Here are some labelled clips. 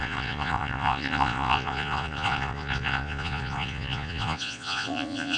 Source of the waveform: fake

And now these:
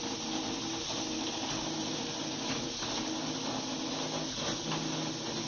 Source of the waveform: real